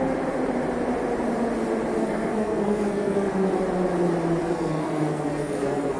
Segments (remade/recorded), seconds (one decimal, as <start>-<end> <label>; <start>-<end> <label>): 0.0-2.0 recorded; 2.0-3.5 remade; 3.5-4.4 recorded; 4.4-6.0 remade

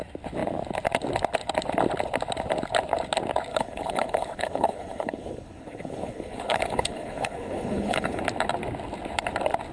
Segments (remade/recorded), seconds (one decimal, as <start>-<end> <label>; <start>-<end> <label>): 0.0-3.5 recorded; 3.5-8.2 remade; 8.2-9.7 recorded

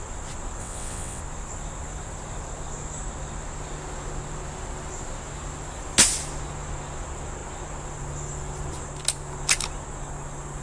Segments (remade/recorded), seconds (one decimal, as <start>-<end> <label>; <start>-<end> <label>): 0.0-0.6 recorded; 0.6-1.2 remade; 1.2-10.6 recorded